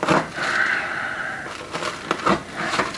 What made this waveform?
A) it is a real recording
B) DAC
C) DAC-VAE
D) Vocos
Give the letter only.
A